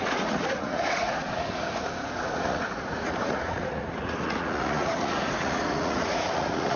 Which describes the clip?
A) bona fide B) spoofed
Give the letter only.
B